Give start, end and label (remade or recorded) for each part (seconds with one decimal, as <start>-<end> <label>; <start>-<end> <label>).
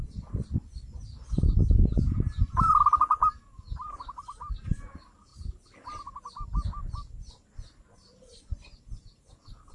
0.0-9.7 recorded